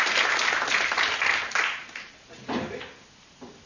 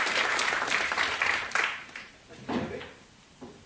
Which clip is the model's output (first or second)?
second